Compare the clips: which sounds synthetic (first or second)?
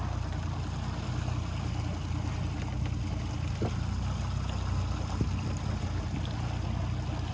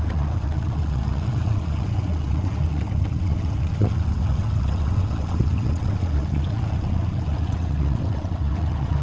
second